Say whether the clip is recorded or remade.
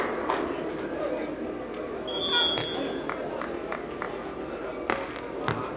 recorded